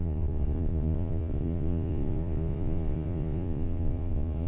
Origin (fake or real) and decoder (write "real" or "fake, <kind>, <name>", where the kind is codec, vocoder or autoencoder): fake, vocoder, Vocos